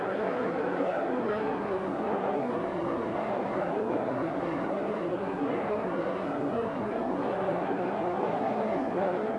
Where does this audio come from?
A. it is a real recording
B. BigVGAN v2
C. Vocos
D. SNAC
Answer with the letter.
D